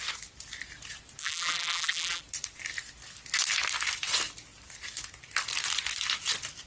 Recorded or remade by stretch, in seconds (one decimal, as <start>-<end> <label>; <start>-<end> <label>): 0.0-1.2 recorded; 1.2-2.2 remade; 2.2-6.7 recorded